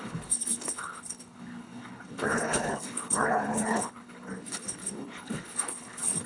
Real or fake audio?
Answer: fake